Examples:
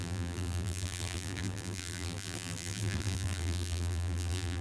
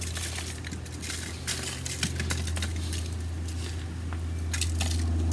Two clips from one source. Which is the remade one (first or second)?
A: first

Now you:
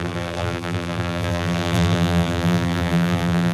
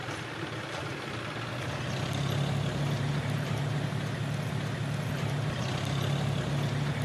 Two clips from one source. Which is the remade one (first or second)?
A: first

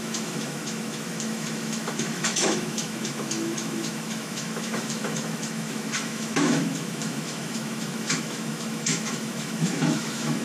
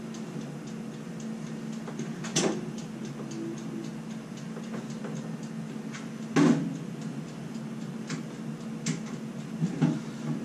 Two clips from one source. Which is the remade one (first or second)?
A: first